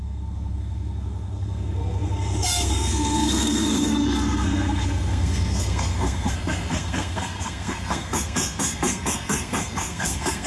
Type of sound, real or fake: fake